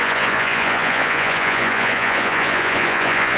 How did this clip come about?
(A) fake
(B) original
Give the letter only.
A